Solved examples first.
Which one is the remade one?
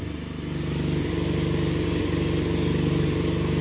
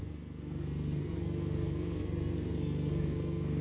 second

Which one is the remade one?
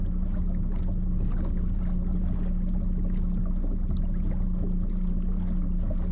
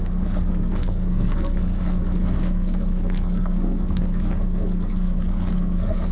second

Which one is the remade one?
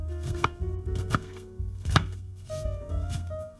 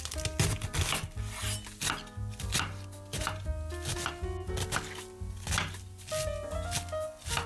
first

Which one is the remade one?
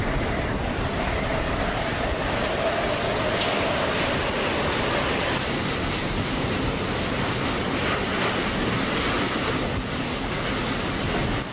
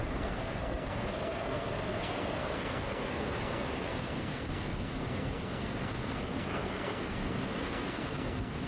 second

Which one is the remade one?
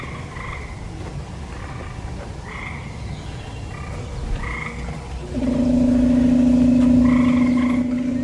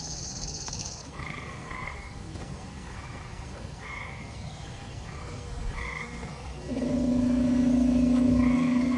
second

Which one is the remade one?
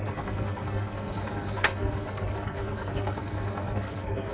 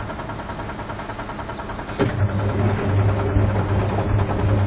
first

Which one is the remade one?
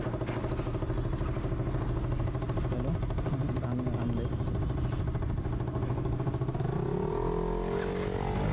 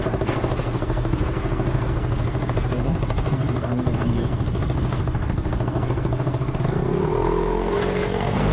second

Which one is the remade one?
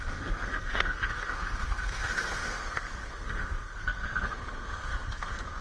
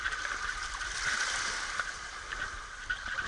first